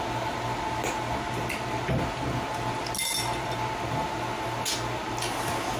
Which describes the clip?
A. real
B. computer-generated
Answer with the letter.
A